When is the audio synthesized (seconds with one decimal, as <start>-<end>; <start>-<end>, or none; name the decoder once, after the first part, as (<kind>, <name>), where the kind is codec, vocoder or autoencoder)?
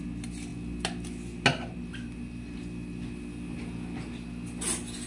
none